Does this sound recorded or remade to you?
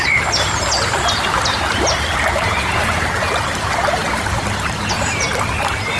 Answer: recorded